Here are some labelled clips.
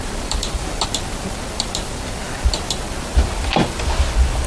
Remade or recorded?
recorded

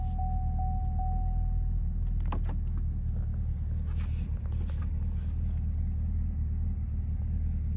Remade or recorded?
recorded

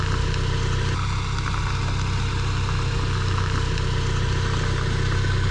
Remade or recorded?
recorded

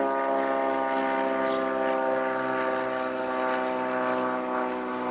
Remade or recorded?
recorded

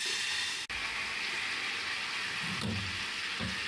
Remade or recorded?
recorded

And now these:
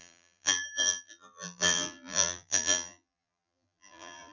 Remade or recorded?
remade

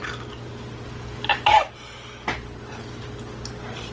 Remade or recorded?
recorded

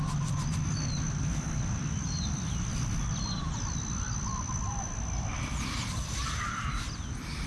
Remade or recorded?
recorded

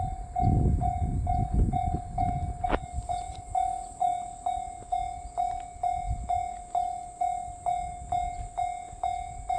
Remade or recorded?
recorded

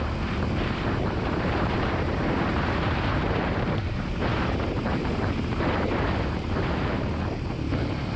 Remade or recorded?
remade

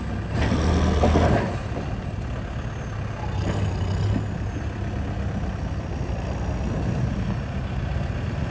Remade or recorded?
recorded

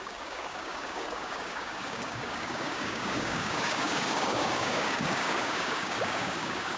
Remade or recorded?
remade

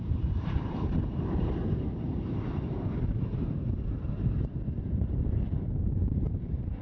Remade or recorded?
remade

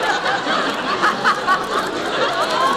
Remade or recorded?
recorded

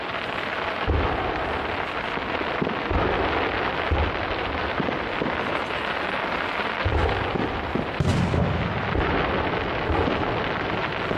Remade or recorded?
recorded